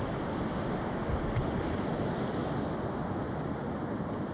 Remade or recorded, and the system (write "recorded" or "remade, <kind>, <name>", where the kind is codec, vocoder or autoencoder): recorded